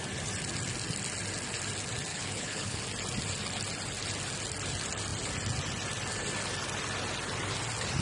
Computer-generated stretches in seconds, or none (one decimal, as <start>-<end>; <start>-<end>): 2.1-2.8